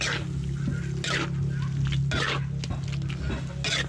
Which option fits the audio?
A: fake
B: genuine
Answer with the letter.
B